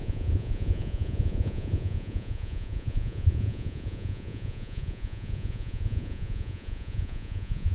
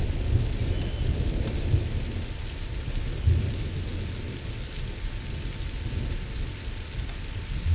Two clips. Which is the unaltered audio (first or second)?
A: second